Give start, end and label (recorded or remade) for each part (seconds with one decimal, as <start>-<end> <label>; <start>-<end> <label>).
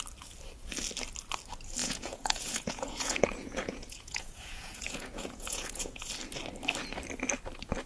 0.0-1.8 recorded; 1.8-6.1 remade; 6.1-7.9 recorded